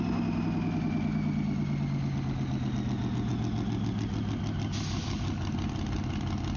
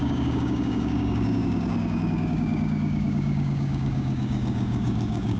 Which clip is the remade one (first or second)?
second